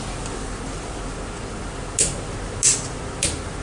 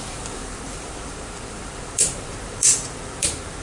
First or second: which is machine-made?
second